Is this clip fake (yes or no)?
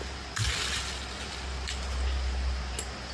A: no